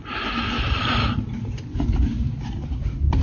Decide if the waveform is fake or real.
real